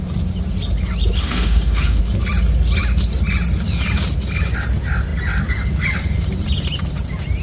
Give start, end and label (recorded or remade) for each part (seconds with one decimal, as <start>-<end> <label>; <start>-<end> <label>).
0.0-1.2 recorded; 1.2-2.0 remade; 2.0-7.4 recorded